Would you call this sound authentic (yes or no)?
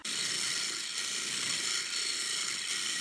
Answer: yes